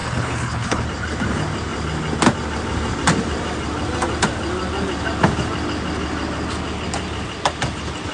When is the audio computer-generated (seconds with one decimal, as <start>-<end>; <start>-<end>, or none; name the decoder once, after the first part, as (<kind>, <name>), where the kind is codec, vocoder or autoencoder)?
0.0-0.8 (codec, HILCodec)